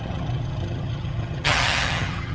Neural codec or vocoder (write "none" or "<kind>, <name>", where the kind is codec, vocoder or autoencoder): vocoder, HiFi-GAN